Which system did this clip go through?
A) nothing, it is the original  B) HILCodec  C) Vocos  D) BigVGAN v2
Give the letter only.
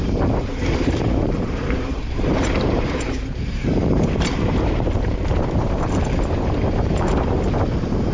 D